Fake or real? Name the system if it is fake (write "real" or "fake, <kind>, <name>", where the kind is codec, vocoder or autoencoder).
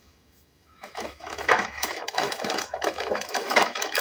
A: fake, autoencoder, DAC-VAE